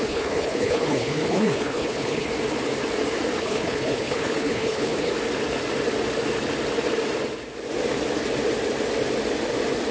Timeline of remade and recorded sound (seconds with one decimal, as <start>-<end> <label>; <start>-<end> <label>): 0.0-2.3 remade; 2.3-3.4 recorded; 3.4-5.1 remade; 5.1-9.9 recorded